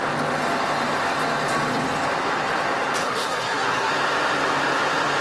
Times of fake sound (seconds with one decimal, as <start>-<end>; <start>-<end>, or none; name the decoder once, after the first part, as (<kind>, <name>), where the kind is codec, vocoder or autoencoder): 3.0-3.9 (codec, SNAC)